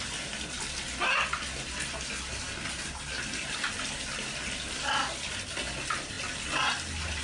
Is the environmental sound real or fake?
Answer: real